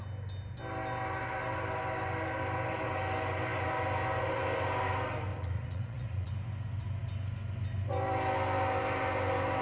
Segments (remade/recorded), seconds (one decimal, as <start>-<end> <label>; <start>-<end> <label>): 0.0-5.3 recorded; 5.3-6.3 remade; 6.3-9.6 recorded